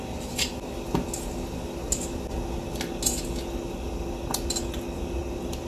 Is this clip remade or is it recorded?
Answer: recorded